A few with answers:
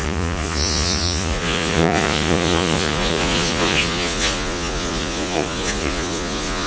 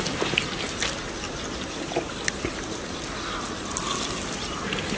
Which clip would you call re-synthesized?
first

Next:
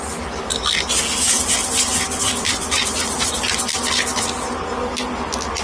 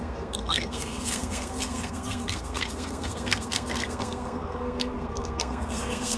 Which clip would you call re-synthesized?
second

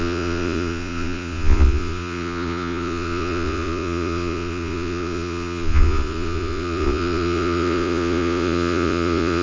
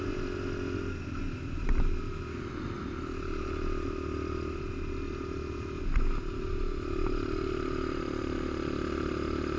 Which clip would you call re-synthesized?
first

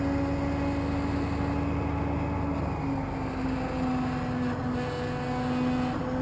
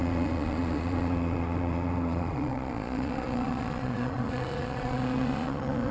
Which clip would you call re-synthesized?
second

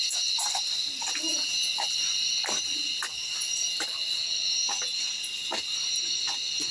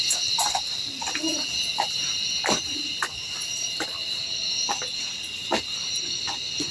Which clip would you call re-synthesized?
second